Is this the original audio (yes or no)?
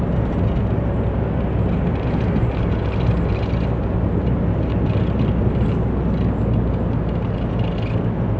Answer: yes